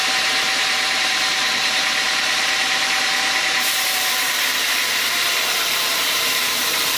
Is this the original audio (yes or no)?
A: no